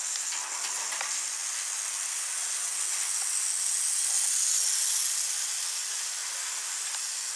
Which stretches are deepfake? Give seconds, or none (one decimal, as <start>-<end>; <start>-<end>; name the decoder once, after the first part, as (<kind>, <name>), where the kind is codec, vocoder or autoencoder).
none